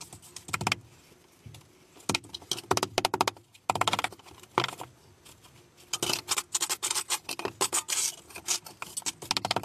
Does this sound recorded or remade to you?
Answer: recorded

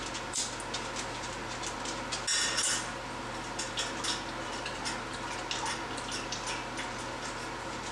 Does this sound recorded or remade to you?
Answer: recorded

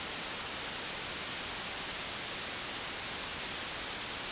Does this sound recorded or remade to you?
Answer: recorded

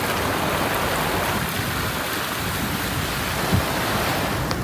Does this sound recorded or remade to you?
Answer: recorded